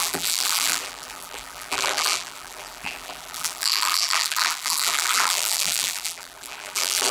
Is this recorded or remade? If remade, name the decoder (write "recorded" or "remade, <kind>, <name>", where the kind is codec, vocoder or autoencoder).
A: remade, vocoder, BigVGAN v2